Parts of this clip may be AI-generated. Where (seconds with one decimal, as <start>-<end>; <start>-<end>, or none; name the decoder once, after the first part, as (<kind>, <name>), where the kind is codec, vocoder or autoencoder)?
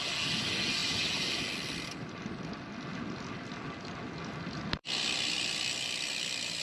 0.8-1.4 (vocoder, BigVGAN v2); 4.8-6.6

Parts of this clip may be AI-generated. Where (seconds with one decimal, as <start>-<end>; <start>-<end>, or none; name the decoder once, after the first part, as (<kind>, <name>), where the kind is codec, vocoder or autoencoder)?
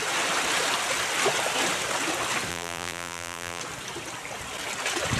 2.5-3.6 (vocoder, BigVGAN v2)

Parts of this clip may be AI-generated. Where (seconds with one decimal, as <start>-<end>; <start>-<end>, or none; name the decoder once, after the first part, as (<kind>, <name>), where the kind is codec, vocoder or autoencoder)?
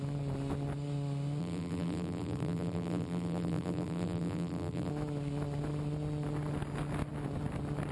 1.4-4.9 (vocoder, BigVGAN v2)